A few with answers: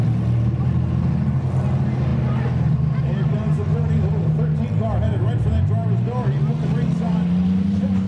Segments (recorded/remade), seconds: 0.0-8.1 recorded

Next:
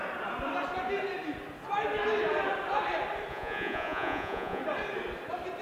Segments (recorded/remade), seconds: 0.0-3.3 recorded; 3.3-4.6 remade; 4.6-5.6 recorded

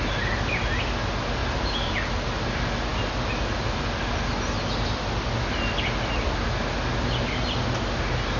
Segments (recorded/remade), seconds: 0.0-1.4 recorded; 1.4-1.9 remade; 1.9-8.4 recorded

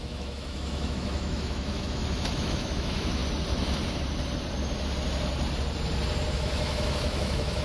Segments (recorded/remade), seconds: 0.0-3.2 remade; 3.2-6.3 recorded; 6.3-7.6 remade